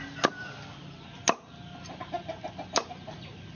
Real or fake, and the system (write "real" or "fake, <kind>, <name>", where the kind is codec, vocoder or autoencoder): real